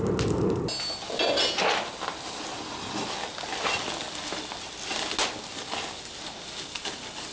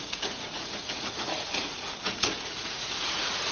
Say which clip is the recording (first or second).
first